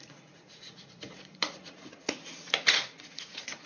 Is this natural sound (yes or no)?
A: no